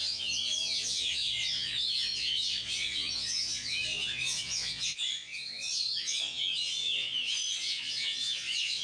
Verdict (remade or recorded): remade